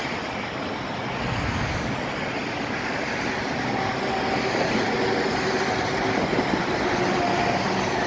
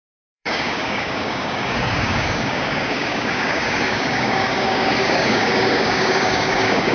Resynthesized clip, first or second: second